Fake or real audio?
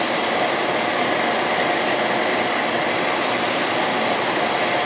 real